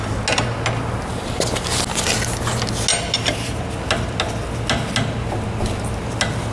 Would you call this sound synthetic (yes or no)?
no